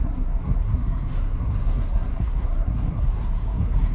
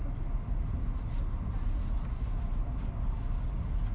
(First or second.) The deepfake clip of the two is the first